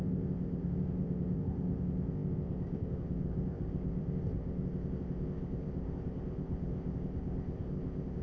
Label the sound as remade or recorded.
remade